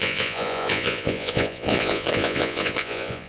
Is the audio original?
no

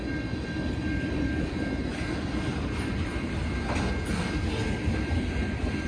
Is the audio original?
yes